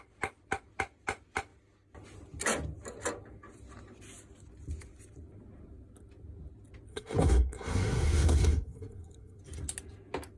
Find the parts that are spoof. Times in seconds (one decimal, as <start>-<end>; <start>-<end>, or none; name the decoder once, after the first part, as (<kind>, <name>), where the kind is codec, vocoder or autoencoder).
6.9-9.4 (codec, SNAC)